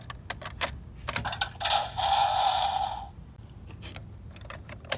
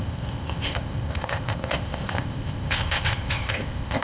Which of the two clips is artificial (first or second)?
second